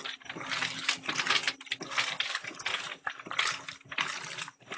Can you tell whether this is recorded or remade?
recorded